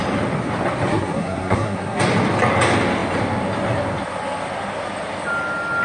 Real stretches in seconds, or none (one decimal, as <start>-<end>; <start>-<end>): 0.0-0.9; 2.0-5.8